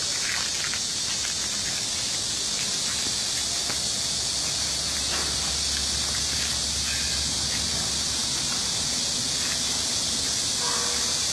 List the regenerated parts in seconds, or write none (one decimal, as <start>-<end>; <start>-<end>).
none